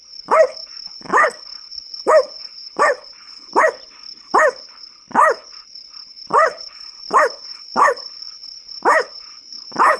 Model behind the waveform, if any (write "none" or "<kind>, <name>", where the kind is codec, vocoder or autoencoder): codec, HILCodec